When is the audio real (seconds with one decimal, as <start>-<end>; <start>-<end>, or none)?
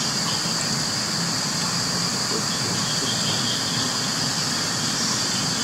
0.0-5.6